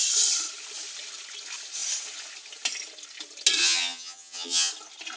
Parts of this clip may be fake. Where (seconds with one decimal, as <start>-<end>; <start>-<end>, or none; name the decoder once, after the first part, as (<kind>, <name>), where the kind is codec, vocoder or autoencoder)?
3.6-4.7 (vocoder, HiFi-GAN)